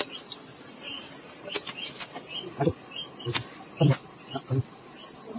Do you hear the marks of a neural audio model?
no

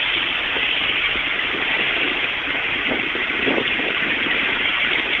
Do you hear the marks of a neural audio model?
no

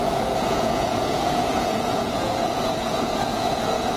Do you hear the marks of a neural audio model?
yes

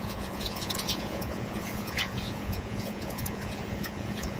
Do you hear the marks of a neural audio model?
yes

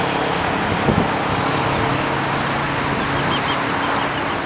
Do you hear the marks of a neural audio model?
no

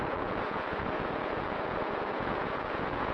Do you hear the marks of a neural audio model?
yes